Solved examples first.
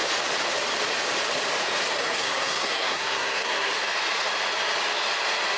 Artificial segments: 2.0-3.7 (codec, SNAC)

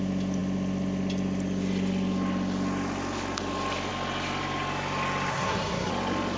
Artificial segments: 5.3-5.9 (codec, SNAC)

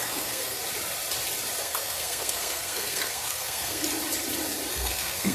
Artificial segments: 0.0-0.6 (codec, SNAC); 1.6-3.8; 4.7-5.3

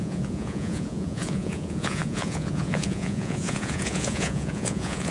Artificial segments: 0.0-5.1 (vocoder, Vocos)

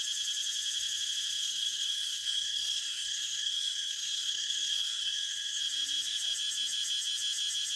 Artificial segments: 1.4-5.6 (codec, SNAC)

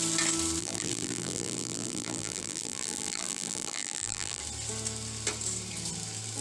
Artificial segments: 0.6-4.4 (vocoder, BigVGAN v2)